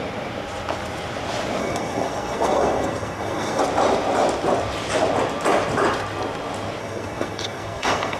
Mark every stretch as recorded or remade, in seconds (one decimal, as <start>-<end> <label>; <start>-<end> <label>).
0.0-1.6 recorded; 1.6-3.6 remade; 3.6-6.8 recorded; 6.8-8.2 remade